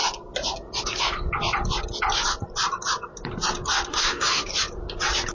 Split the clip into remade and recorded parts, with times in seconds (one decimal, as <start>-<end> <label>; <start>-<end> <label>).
0.0-3.9 recorded; 3.9-4.5 remade; 4.5-5.3 recorded